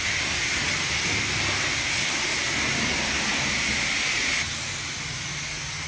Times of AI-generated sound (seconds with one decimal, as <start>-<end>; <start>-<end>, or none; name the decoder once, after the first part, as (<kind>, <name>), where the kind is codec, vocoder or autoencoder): 2.3-5.9 (vocoder, BigVGAN v2)